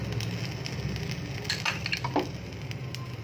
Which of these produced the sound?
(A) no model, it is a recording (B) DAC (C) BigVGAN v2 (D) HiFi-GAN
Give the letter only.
A